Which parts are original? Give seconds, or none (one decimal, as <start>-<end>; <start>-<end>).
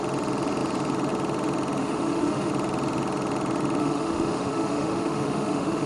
0.0-1.8; 2.5-3.8